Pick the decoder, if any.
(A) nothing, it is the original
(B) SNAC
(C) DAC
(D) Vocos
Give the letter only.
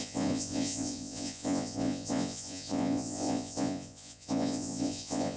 D